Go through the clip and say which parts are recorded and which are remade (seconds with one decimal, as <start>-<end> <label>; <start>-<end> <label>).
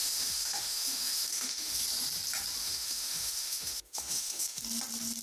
0.0-1.8 remade; 1.8-2.6 recorded; 2.6-4.6 remade; 4.6-5.2 recorded